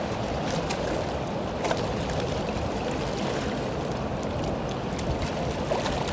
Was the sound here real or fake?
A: real